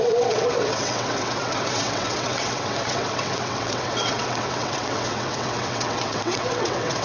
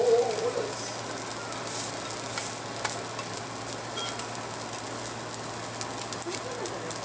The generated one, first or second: first